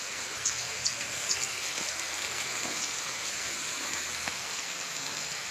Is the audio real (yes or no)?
no